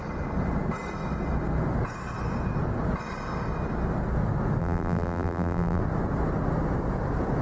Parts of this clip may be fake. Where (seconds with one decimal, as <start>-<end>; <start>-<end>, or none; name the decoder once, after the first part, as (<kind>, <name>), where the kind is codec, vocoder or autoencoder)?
4.6-5.8 (vocoder, BigVGAN v2)